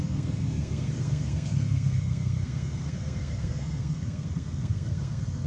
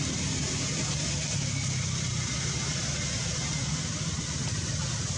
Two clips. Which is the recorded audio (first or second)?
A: second